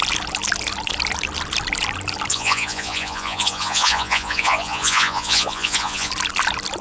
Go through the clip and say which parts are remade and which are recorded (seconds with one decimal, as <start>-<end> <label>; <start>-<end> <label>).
0.0-2.3 recorded; 2.3-6.1 remade; 6.1-6.8 recorded